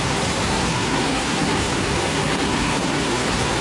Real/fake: fake